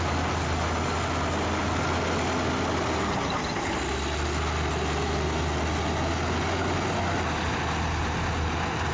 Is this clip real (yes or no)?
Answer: yes